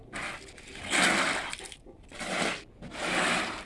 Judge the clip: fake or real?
real